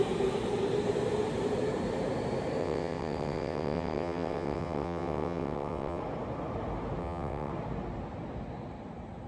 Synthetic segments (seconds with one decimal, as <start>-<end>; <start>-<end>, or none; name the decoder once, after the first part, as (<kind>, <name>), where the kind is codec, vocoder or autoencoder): 2.6-6.0 (vocoder, WaveNeXt); 7.0-7.5